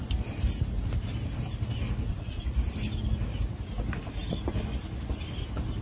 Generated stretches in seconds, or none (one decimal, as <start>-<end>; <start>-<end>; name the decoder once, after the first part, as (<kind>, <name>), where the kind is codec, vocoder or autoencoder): 2.1-2.7 (vocoder, Vocos)